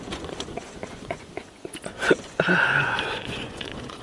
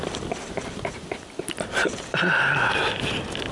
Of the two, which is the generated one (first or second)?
first